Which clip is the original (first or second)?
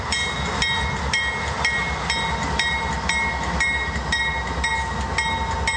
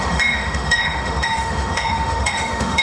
first